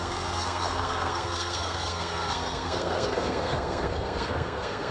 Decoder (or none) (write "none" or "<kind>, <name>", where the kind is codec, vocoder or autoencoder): codec, SNAC